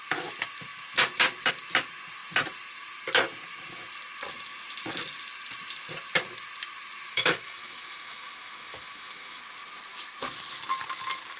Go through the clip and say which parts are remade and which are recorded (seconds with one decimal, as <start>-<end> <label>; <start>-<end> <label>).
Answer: 0.0-7.1 recorded; 7.1-9.4 remade; 9.4-11.4 recorded

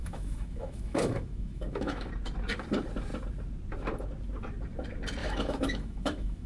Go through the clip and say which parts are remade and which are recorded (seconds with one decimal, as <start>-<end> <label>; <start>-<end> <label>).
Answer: 0.0-2.1 remade; 2.1-5.2 recorded; 5.2-6.5 remade